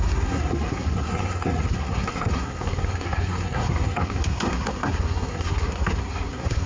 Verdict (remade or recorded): remade